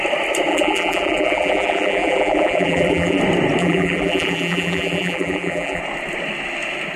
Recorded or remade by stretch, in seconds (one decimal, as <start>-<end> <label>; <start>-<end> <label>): 0.0-0.5 recorded; 0.5-3.2 remade; 3.2-3.6 recorded; 3.6-5.8 remade; 5.8-7.0 recorded